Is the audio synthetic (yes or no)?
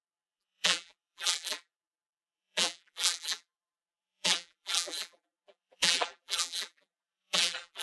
yes